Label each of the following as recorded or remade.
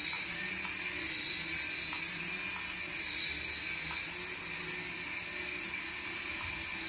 recorded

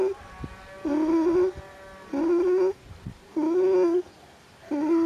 recorded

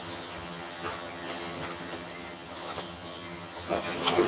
remade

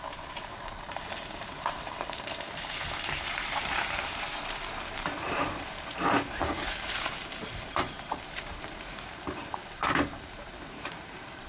remade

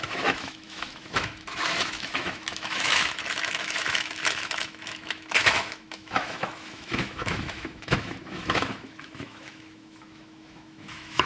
remade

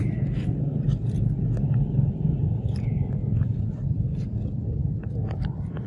recorded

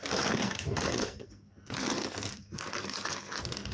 remade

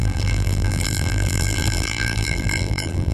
remade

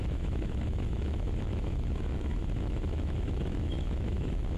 remade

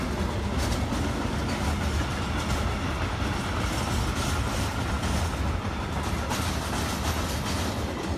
recorded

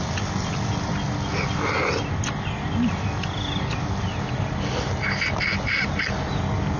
recorded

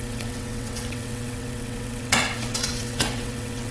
remade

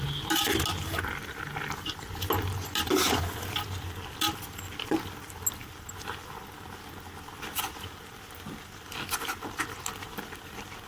recorded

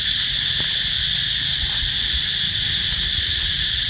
recorded